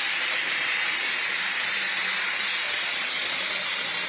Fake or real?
fake